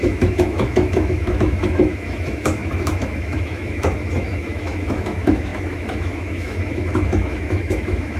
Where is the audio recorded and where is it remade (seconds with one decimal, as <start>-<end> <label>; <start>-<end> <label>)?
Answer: 0.0-8.2 remade